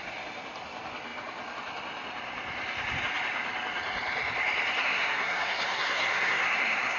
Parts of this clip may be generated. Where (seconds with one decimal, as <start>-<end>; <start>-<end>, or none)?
4.8-7.0